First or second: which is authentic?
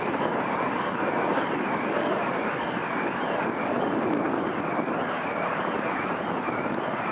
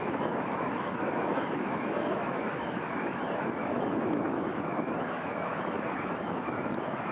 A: first